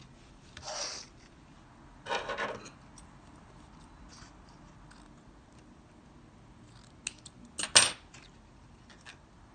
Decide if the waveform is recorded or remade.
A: recorded